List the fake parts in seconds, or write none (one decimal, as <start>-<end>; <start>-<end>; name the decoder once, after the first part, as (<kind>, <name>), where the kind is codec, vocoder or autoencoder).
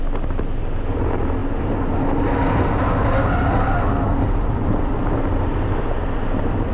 none